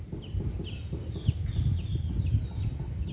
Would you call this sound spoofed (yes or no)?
no